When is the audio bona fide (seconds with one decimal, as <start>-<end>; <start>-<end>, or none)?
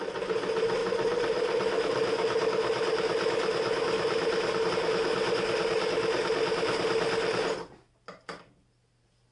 0.0-9.3